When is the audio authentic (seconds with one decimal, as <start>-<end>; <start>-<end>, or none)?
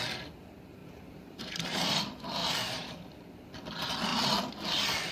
0.0-0.8; 2.0-2.4; 3.1-5.1